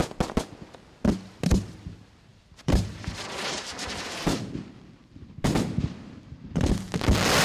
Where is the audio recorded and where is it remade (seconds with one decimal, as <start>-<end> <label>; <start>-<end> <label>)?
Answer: 0.0-2.3 recorded; 2.3-6.7 remade; 6.7-7.4 recorded